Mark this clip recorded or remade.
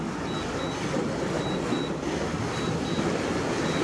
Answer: recorded